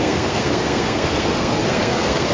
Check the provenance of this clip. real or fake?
fake